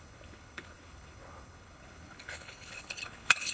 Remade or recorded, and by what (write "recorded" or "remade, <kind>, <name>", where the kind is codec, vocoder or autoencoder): remade, codec, HILCodec